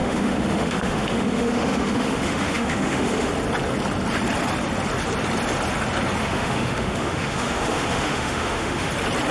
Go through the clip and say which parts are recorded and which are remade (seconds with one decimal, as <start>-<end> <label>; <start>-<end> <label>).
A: 0.0-3.3 remade; 3.3-6.2 recorded; 6.2-8.9 remade; 8.9-9.3 recorded

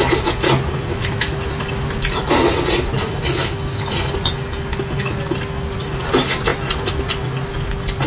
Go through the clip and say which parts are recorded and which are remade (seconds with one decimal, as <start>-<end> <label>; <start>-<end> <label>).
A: 0.0-0.9 recorded; 0.9-1.5 remade; 1.5-8.1 recorded

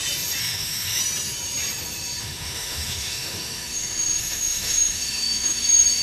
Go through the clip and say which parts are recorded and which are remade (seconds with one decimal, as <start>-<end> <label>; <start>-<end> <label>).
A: 0.0-0.4 recorded; 0.4-1.0 remade; 1.0-2.2 recorded; 2.2-6.0 remade

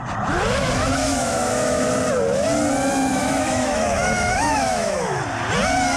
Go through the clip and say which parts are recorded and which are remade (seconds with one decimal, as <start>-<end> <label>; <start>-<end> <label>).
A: 0.0-1.0 recorded; 1.0-1.9 remade; 1.9-3.1 recorded; 3.1-5.2 remade; 5.2-6.0 recorded

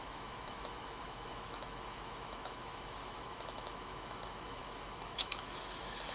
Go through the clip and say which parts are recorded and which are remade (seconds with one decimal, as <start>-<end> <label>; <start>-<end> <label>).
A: 0.0-6.1 remade

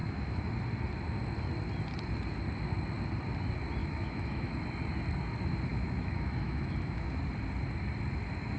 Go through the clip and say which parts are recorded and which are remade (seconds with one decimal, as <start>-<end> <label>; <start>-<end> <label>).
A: 0.0-0.5 remade; 0.5-3.8 recorded; 3.8-4.5 remade; 4.5-5.7 recorded; 5.7-7.2 remade; 7.2-8.6 recorded

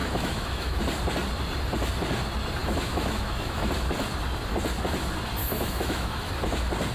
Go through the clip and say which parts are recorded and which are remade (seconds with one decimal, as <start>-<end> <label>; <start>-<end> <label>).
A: 0.0-0.8 remade; 0.8-2.6 recorded; 2.6-3.7 remade; 3.7-5.4 recorded; 5.4-6.3 remade; 6.3-6.9 recorded